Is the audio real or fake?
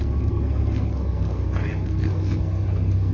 fake